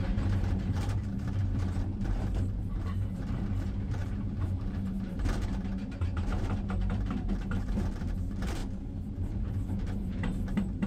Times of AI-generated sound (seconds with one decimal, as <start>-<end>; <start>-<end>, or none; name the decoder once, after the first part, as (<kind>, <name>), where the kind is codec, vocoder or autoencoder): 0.0-8.6 (vocoder, BigVGAN v2); 9.2-10.9